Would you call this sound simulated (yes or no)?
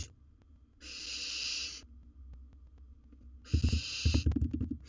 no